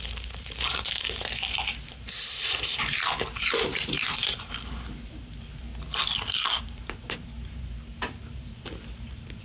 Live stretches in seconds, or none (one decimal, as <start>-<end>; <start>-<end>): 5.7-6.6